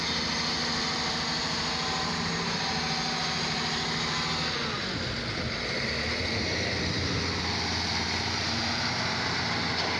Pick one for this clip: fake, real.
real